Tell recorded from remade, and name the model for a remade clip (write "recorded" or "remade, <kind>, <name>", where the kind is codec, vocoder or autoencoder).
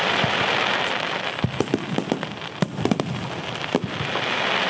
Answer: remade, vocoder, BigVGAN v2